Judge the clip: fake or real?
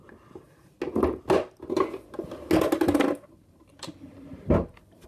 real